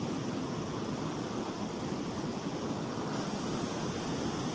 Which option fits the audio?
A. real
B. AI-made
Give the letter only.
A